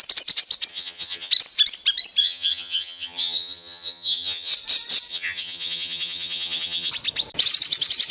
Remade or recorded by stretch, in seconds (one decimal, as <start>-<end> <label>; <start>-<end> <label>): 0.0-0.7 recorded; 0.7-1.3 remade; 1.3-2.2 recorded; 2.2-4.5 remade; 4.5-5.1 recorded; 5.1-6.9 remade; 6.9-8.1 recorded